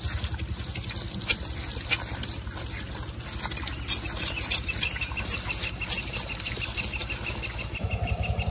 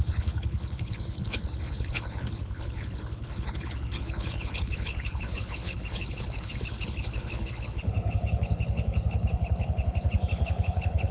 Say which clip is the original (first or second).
first